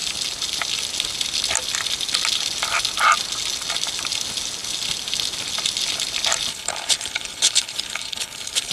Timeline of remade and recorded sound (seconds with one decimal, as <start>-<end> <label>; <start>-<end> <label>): 0.0-6.5 recorded; 6.5-8.7 remade